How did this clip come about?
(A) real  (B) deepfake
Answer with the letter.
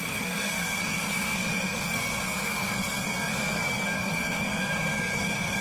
B